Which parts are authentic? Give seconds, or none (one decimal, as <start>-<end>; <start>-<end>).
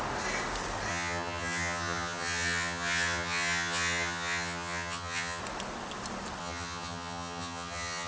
0.0-0.9; 5.4-6.4